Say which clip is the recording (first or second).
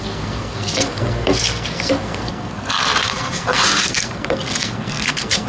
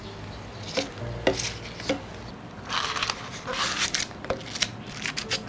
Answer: second